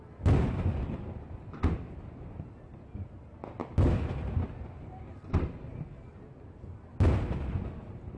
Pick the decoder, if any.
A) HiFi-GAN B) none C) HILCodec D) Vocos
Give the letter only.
B